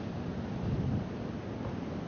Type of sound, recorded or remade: recorded